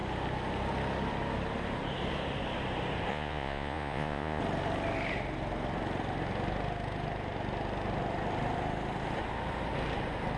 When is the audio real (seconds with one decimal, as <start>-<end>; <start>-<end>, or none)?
0.0-3.1; 4.4-10.4